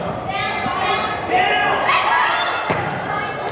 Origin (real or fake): real